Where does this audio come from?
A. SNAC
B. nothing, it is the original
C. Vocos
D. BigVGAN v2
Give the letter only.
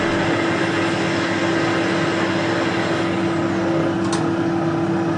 B